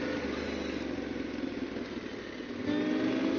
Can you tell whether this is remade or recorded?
recorded